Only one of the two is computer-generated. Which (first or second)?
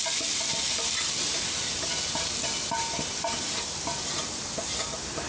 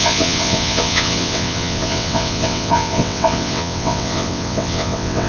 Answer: second